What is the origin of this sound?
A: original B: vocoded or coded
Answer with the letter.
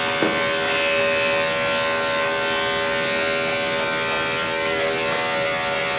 A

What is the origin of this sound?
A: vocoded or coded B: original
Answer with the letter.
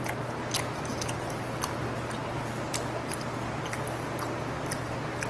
B